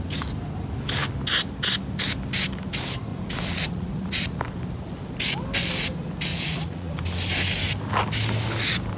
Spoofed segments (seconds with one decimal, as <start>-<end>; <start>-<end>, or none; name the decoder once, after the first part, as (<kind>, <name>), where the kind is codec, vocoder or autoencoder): 3.1-4.4 (vocoder, Vocos); 6.3-6.9